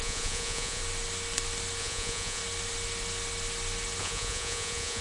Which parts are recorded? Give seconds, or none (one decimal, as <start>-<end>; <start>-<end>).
0.8-1.8; 2.4-4.0